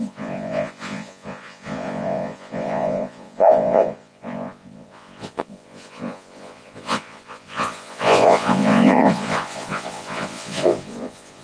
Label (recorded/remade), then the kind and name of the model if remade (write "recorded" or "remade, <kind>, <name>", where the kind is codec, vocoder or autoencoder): remade, vocoder, Vocos